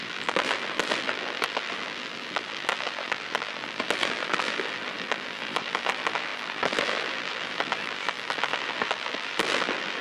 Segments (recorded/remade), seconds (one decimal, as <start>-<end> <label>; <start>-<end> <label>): 0.0-10.0 remade